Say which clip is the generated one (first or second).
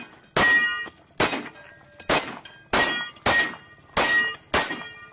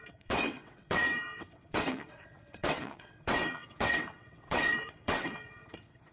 second